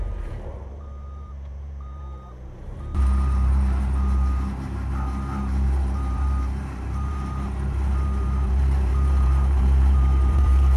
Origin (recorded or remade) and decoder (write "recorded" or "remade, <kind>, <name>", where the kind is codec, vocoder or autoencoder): remade, vocoder, BigVGAN v2